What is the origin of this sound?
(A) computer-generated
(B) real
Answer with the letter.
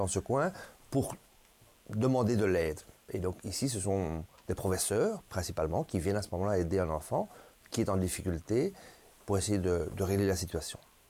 A